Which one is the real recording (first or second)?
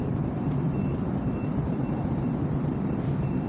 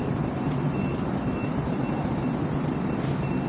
second